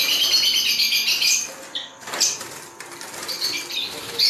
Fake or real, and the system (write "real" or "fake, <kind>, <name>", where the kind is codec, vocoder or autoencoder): fake, vocoder, BigVGAN v2